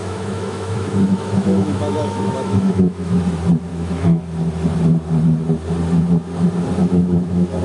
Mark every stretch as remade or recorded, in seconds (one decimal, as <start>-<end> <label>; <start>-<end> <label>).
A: 0.0-3.2 remade; 3.2-3.7 recorded; 3.7-4.2 remade; 4.2-6.8 recorded; 6.8-7.6 remade